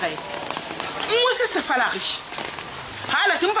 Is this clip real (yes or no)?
yes